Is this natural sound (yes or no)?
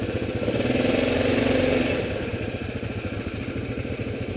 no